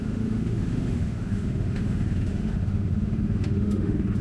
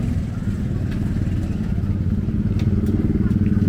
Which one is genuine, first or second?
second